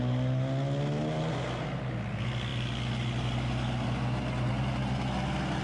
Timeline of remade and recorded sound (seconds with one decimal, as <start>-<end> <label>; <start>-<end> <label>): 0.0-5.6 recorded